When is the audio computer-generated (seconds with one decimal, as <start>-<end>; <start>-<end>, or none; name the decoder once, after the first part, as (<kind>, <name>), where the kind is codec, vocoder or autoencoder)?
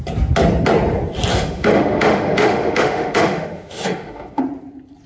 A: 1.3-4.4 (autoencoder, DAC-VAE)